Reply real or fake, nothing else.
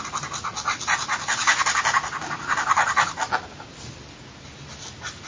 real